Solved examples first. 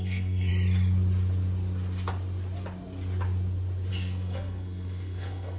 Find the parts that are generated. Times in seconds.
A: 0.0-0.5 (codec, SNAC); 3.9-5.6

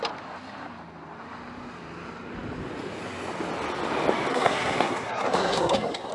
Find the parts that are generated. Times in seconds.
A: 4.3-6.1 (codec, SNAC)

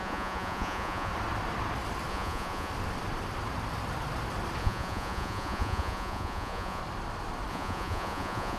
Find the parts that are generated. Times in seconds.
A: 0.0-1.1 (vocoder, Vocos); 2.1-2.7; 4.6-6.8; 7.5-8.6

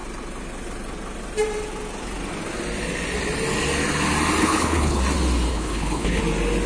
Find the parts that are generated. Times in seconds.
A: 4.4-5.0 (codec, HILCodec); 5.5-6.2

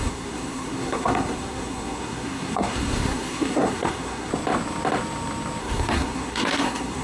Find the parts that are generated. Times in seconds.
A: 0.0-4.3 (codec, SNAC); 5.6-7.0